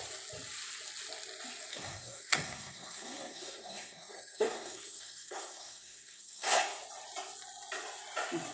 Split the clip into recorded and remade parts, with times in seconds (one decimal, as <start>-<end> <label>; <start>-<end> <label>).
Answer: 0.0-1.7 recorded; 1.7-6.8 remade; 6.8-8.5 recorded